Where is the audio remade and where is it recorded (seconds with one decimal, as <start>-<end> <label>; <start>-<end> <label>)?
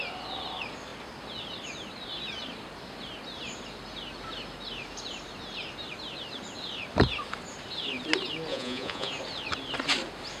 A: 0.0-8.5 recorded; 8.5-9.1 remade; 9.1-10.4 recorded